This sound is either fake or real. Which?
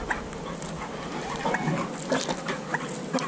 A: real